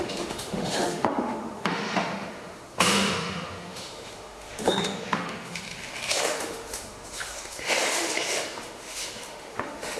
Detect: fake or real fake